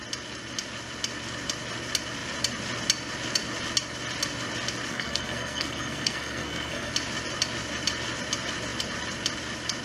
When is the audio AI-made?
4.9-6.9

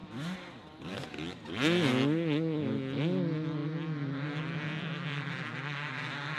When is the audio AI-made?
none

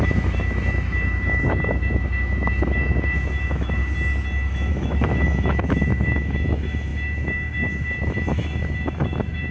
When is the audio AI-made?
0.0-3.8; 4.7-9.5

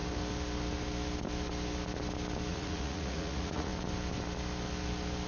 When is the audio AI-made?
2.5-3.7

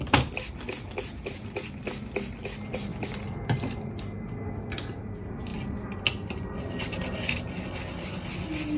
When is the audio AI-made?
none

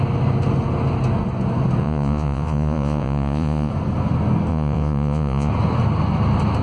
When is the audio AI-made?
1.8-3.7; 4.5-5.5